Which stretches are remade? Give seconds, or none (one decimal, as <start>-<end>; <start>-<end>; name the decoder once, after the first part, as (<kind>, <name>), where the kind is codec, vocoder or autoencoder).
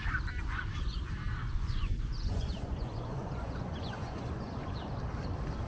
1.4-4.8 (vocoder, Vocos)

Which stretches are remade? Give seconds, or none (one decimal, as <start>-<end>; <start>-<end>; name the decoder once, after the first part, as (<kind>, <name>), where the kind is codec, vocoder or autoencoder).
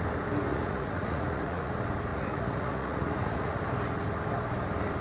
0.5-1.7 (vocoder, Vocos); 2.1-3.6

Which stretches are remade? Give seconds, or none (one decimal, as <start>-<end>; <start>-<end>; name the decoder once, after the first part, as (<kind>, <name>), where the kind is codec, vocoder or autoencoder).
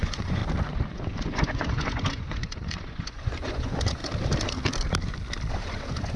0.0-0.4 (vocoder, Vocos); 0.9-4.0; 5.5-6.2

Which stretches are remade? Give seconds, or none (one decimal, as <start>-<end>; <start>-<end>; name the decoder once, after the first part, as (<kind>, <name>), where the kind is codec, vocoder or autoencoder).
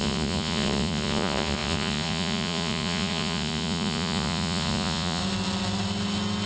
0.0-5.2 (vocoder, Vocos)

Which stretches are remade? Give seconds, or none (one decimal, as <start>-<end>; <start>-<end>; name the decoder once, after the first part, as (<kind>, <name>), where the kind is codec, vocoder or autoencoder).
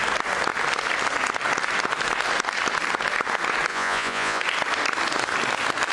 3.7-4.4 (vocoder, Vocos)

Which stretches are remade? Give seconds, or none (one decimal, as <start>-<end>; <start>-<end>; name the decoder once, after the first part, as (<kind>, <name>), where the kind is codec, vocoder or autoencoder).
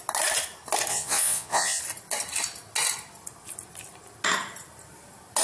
0.9-1.8 (vocoder, Vocos)